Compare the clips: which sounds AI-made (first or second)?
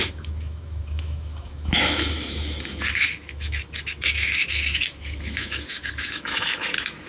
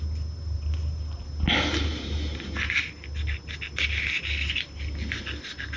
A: first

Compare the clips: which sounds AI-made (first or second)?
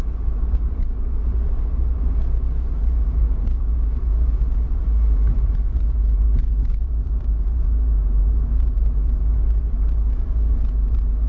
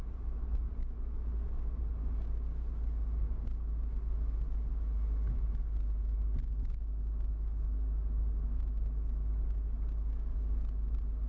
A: first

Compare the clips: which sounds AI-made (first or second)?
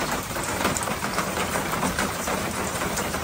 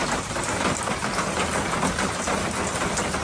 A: first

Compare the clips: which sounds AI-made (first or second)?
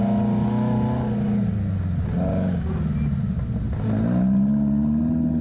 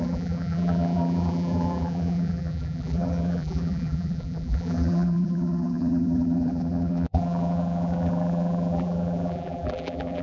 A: second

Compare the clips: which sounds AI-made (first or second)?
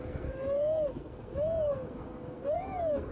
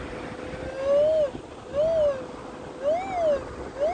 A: first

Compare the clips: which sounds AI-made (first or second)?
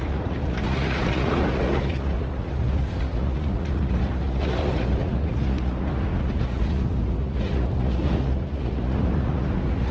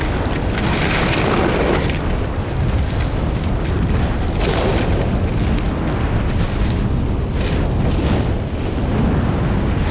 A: first